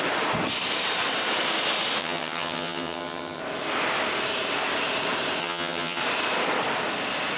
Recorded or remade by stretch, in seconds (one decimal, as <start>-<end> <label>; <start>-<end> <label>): 0.0-2.0 recorded; 2.0-3.4 remade; 3.4-5.4 recorded; 5.4-6.0 remade; 6.0-7.4 recorded